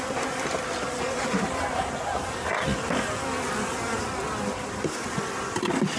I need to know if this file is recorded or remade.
recorded